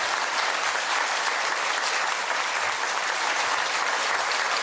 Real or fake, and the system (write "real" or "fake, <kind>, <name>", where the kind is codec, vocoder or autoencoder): real